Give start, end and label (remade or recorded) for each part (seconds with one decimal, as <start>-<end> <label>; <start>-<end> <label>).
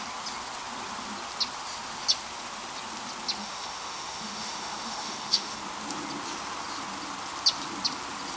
0.0-3.4 recorded; 3.4-5.6 remade; 5.6-8.4 recorded